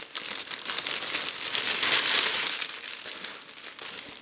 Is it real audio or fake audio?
real